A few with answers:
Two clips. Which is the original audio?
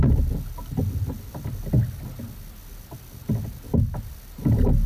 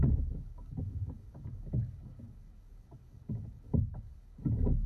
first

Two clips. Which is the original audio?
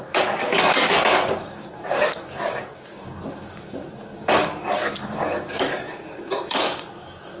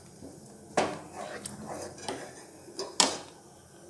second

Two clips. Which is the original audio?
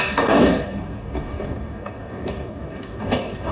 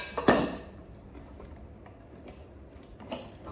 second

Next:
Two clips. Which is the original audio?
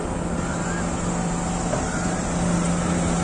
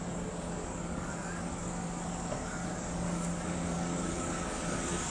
first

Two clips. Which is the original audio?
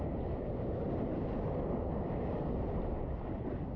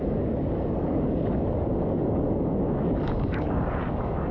first